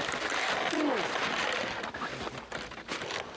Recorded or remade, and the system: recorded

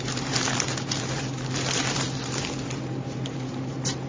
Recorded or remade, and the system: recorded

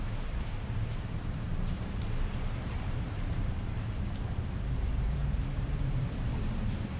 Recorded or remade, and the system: remade, vocoder, BigVGAN v2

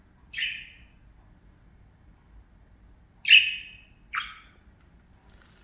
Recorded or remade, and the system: recorded